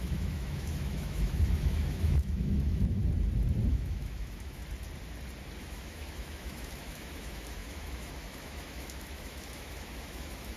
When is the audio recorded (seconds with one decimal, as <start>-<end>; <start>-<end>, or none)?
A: 3.0-3.7; 4.6-5.6